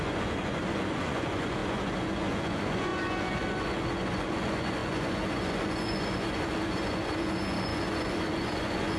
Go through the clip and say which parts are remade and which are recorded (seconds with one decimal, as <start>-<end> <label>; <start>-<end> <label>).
0.0-9.0 remade

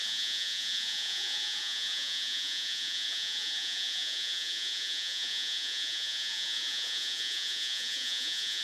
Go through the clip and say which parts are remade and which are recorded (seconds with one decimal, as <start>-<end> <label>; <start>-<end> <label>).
0.0-8.6 remade

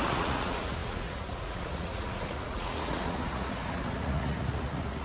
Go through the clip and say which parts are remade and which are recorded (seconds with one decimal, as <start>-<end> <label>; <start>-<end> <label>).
0.0-5.0 remade

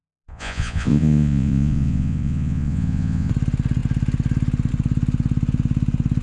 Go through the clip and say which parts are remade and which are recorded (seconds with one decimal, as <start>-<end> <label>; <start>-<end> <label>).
0.0-3.3 remade; 3.3-6.2 recorded

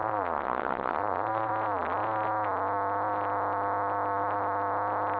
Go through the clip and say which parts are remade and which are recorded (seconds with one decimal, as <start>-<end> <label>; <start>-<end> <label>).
0.0-1.5 remade; 1.5-5.2 recorded

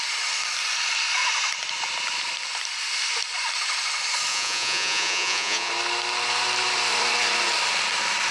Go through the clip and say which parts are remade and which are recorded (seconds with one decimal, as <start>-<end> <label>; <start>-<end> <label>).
0.0-4.3 recorded; 4.3-5.7 remade; 5.7-8.3 recorded

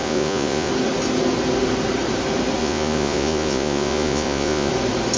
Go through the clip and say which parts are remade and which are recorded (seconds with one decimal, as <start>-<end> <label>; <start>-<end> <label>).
0.0-0.7 remade; 0.7-2.6 recorded; 2.6-4.7 remade; 4.7-5.2 recorded

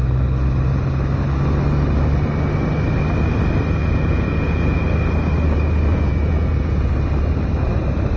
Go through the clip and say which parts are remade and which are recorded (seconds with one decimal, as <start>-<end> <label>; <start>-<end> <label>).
0.0-3.8 recorded; 3.8-4.8 remade; 4.8-5.9 recorded; 5.9-6.9 remade; 6.9-8.2 recorded